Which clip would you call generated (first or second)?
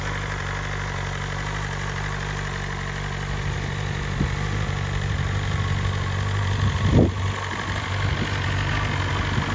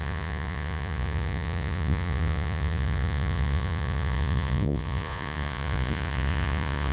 second